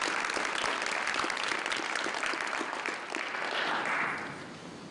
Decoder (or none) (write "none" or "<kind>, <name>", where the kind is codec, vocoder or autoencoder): none